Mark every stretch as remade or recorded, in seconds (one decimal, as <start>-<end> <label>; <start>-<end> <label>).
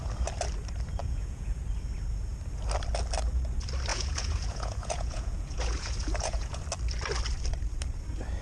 0.0-1.0 recorded; 1.0-1.6 remade; 1.6-3.9 recorded; 3.9-6.6 remade; 6.6-8.4 recorded